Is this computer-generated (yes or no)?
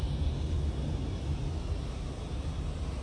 no